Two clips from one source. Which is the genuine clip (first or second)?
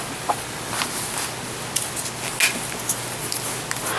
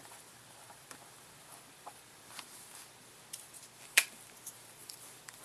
first